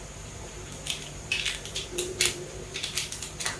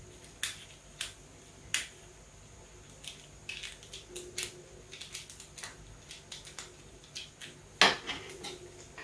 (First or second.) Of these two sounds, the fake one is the first